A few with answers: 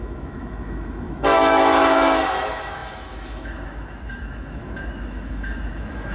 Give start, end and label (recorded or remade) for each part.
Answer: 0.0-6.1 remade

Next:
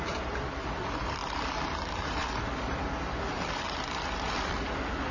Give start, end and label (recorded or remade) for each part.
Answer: 0.0-5.1 remade

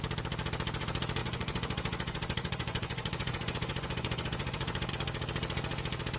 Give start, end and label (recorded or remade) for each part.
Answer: 0.0-1.2 recorded; 1.2-4.9 remade; 4.9-6.2 recorded